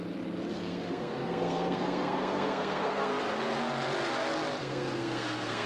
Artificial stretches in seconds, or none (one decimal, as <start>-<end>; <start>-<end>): 0.5-3.1; 4.6-5.7